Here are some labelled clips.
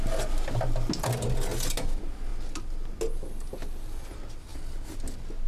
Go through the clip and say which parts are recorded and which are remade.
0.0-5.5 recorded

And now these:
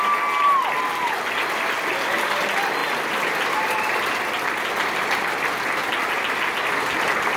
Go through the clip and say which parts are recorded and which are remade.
0.0-7.4 recorded

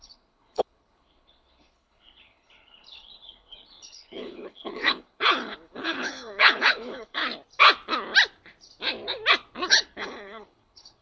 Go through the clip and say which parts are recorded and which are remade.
0.0-7.2 remade; 7.2-9.7 recorded; 9.7-11.0 remade

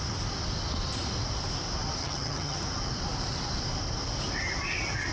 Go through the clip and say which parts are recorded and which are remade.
0.0-2.0 recorded; 2.0-2.6 remade; 2.6-5.1 recorded

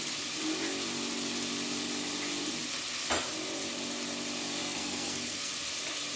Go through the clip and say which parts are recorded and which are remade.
0.0-4.6 recorded; 4.6-5.5 remade; 5.5-6.2 recorded